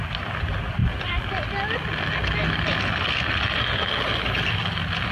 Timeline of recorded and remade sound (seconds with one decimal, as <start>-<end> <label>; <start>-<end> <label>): 0.0-5.1 recorded